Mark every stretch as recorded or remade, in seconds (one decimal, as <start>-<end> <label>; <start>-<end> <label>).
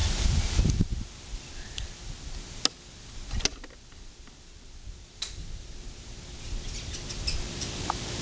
0.0-8.2 recorded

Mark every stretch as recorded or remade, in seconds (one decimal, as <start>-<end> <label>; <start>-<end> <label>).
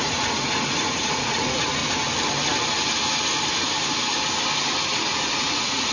0.0-1.8 remade; 1.8-5.3 recorded; 5.3-5.9 remade